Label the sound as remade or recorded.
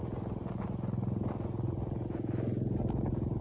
recorded